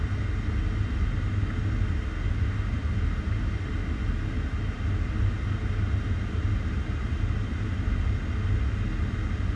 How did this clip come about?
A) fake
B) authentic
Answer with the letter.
B